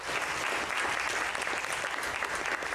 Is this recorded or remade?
recorded